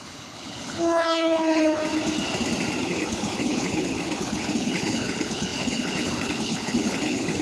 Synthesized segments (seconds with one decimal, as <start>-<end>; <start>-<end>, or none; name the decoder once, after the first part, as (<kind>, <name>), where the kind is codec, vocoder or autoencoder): 0.0-1.8 (codec, HILCodec); 2.8-7.4